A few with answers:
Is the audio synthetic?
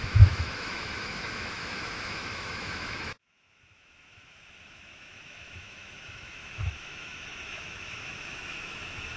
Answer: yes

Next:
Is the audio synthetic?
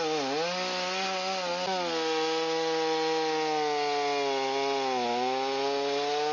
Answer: no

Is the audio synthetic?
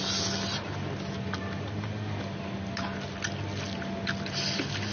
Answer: no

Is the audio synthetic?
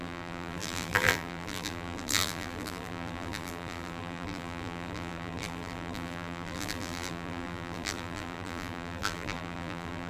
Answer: yes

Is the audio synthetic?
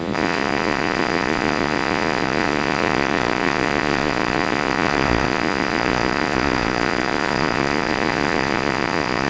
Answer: yes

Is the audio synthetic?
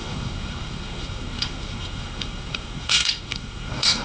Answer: yes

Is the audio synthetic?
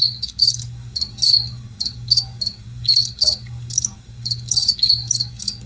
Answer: yes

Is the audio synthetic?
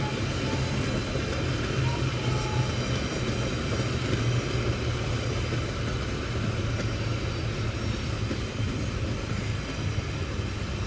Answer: no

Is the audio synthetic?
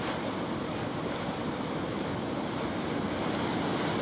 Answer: no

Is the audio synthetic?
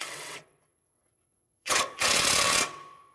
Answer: yes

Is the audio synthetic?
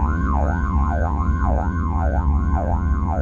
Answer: yes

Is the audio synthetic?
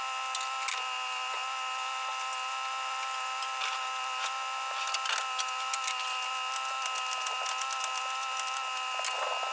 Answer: no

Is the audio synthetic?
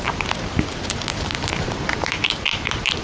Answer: yes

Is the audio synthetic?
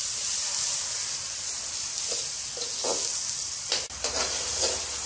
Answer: no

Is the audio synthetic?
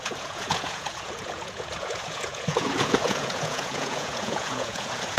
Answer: yes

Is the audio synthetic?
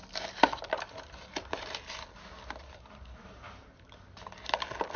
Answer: no